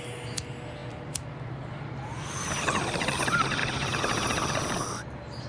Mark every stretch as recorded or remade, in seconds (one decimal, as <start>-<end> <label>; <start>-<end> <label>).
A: 0.0-5.5 recorded